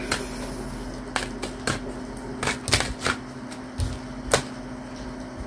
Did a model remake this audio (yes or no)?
no